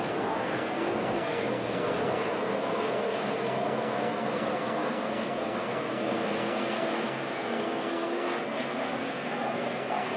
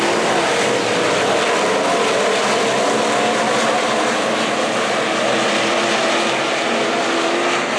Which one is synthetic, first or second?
first